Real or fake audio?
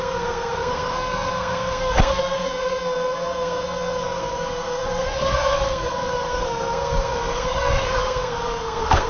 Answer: fake